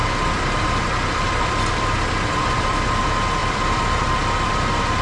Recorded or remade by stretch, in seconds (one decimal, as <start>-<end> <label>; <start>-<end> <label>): 0.0-3.0 remade; 3.0-3.4 recorded; 3.4-4.5 remade; 4.5-5.0 recorded